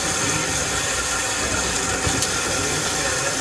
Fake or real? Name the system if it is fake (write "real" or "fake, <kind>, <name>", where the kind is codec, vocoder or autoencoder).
fake, vocoder, BigVGAN v2